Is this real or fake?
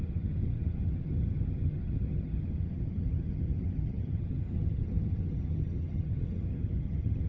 fake